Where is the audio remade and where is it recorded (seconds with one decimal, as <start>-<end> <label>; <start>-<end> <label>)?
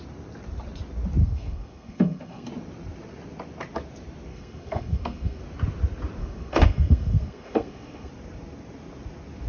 0.0-1.2 recorded; 1.2-2.5 remade; 2.5-4.3 recorded; 4.3-5.4 remade; 5.4-6.2 recorded; 6.2-8.1 remade; 8.1-9.5 recorded